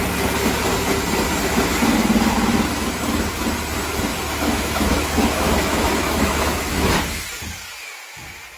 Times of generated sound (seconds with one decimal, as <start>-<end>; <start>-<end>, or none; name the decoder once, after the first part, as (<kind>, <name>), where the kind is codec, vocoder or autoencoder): 4.1-6.9 (autoencoder, DAC-VAE)